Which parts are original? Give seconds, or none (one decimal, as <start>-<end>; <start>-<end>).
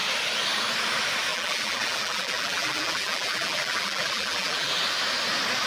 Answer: 0.0-1.3; 4.7-5.7